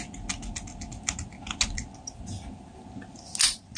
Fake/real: real